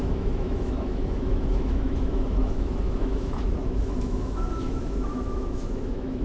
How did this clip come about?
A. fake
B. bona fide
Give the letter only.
A